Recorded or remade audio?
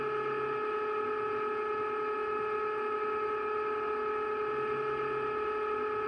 recorded